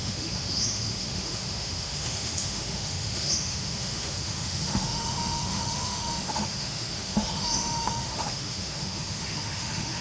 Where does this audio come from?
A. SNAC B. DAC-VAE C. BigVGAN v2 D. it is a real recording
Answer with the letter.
B